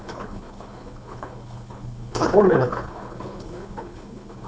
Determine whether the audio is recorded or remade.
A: remade